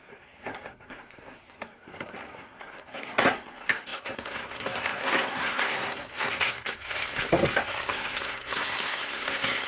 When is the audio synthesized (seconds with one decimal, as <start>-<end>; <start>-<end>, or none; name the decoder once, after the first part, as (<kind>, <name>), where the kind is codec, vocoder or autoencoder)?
0.0-9.7 (codec, SNAC)